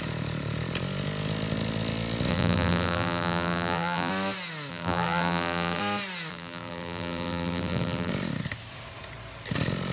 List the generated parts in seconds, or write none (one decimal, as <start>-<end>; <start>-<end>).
2.3-4.1; 4.7-5.8; 6.3-8.1